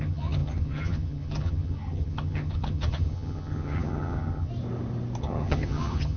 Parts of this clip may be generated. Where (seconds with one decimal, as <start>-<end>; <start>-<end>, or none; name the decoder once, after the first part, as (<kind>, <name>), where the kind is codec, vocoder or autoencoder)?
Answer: 0.0-4.5 (vocoder, HiFi-GAN); 5.2-6.2